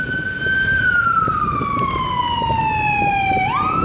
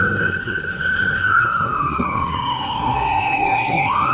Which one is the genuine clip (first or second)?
first